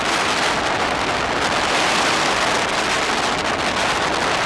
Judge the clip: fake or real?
real